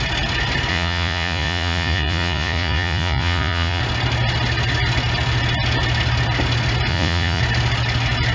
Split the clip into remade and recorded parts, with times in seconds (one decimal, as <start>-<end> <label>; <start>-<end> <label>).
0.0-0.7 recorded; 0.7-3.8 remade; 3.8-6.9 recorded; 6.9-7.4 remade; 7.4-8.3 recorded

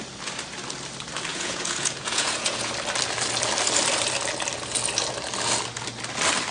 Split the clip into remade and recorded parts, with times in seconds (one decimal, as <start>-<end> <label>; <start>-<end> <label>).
0.0-1.3 recorded; 1.3-2.7 remade; 2.7-6.5 recorded

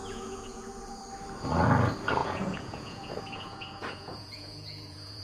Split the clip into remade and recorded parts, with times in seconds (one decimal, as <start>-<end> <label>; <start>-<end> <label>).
0.0-1.0 remade; 1.0-2.2 recorded; 2.2-5.2 remade